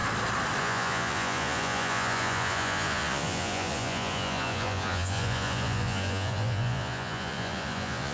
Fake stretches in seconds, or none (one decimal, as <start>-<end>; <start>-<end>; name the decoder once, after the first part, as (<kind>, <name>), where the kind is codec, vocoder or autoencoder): 0.6-8.1 (vocoder, Vocos)